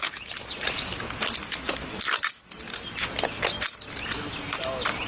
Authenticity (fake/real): real